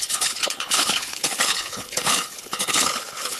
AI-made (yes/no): yes